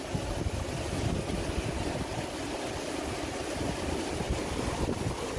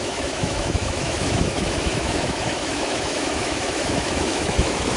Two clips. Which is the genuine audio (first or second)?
first